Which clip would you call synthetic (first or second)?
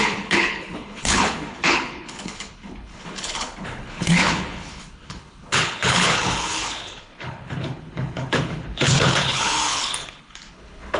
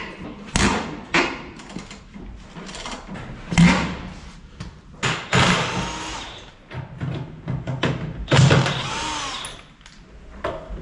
first